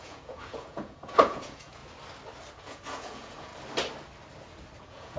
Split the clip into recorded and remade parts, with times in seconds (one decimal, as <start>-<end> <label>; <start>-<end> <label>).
0.0-1.8 remade; 1.8-2.5 recorded; 2.5-3.5 remade; 3.5-4.8 recorded; 4.8-5.2 remade